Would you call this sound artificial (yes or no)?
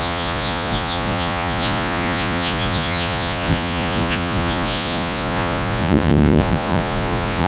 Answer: yes